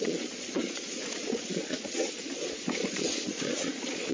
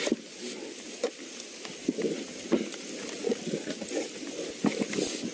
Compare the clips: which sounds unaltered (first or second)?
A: second